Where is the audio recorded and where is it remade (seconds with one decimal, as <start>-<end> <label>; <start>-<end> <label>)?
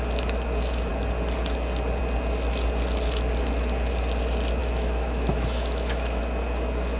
0.0-4.6 recorded; 4.6-6.2 remade; 6.2-7.0 recorded